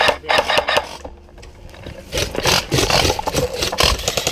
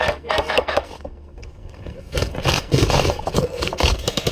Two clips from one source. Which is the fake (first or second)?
second